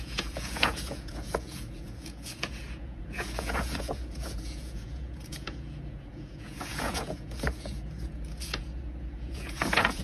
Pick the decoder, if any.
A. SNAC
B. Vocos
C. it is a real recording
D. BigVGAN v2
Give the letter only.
B